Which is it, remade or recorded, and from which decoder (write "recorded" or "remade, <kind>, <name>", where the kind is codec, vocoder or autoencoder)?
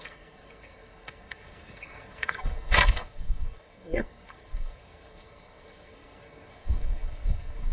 remade, codec, SNAC